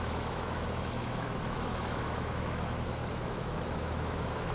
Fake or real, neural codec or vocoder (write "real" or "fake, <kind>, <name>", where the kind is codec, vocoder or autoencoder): fake, autoencoder, DAC-VAE